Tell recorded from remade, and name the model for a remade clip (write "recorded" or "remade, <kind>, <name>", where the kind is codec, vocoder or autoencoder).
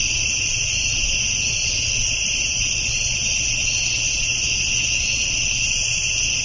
recorded